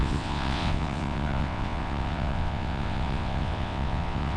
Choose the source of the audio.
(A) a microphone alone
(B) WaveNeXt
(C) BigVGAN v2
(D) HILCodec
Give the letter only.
B